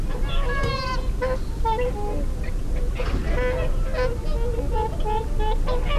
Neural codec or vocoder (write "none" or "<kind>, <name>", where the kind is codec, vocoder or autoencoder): none